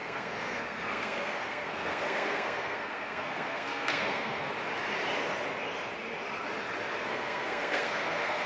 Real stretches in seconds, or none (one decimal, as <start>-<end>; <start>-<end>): 4.5-7.0